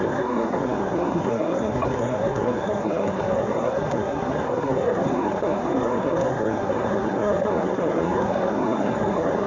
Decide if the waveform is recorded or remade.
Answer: remade